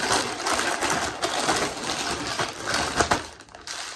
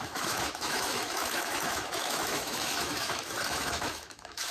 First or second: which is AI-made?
second